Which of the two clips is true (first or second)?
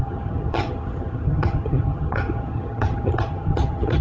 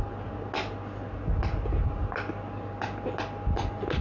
second